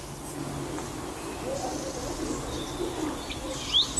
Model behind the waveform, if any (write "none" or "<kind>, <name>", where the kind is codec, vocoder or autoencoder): none